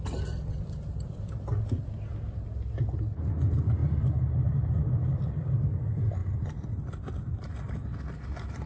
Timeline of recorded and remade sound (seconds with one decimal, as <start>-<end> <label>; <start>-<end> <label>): 0.0-0.5 recorded; 0.5-1.3 remade; 1.3-6.2 recorded; 6.2-7.5 remade; 7.5-8.7 recorded